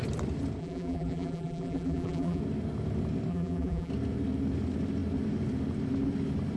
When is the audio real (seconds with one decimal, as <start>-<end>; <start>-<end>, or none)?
0.0-0.6; 2.4-3.3; 3.9-6.6

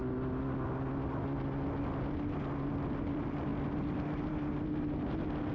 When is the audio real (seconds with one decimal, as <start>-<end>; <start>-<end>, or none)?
0.0-3.1; 3.5-5.5

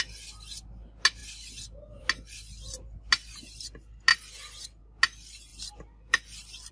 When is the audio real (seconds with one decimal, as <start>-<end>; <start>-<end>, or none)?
0.0-4.1; 4.8-5.5

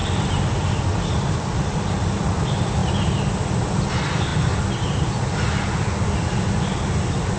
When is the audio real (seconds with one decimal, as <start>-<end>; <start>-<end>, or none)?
2.1-2.8; 3.9-7.4